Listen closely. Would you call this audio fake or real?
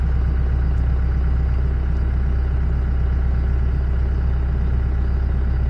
real